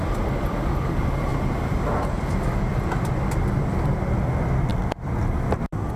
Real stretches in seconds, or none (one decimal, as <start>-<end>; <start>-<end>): 0.0-6.0